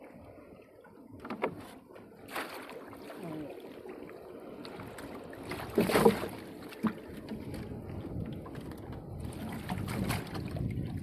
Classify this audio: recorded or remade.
recorded